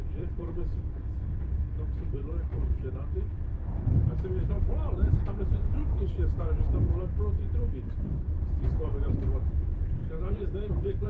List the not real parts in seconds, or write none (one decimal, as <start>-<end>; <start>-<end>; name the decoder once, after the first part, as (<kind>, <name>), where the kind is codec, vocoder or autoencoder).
0.0-0.7 (vocoder, BigVGAN v2); 2.1-5.8; 8.1-11.1